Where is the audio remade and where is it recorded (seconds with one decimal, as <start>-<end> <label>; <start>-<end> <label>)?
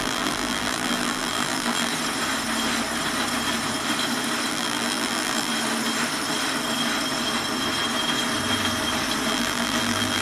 0.0-1.9 remade; 1.9-4.5 recorded; 4.5-5.5 remade; 5.5-9.3 recorded; 9.3-10.2 remade